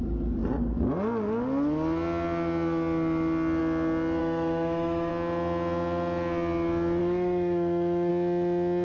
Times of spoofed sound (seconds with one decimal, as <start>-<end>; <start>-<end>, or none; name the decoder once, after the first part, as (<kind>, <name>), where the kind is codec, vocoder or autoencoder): 4.2-5.1 (autoencoder, DAC-VAE); 7.0-8.1